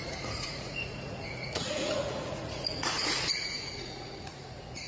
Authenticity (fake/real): fake